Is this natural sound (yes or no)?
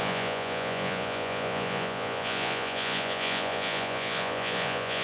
no